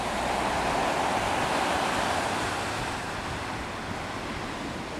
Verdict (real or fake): real